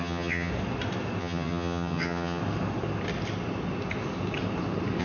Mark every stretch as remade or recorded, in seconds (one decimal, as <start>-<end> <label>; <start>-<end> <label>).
0.0-0.5 remade; 0.5-1.2 recorded; 1.2-2.4 remade; 2.4-5.0 recorded